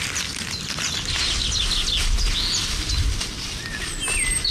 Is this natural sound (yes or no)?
yes